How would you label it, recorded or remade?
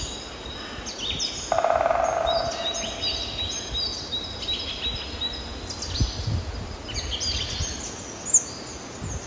recorded